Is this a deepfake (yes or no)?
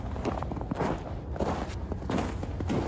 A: no